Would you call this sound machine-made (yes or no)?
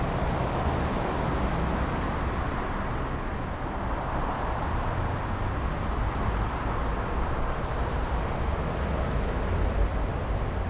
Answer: no